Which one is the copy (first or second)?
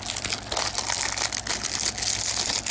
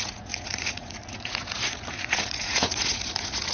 second